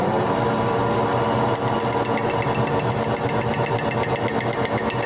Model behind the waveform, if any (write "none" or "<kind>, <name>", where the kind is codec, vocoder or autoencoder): none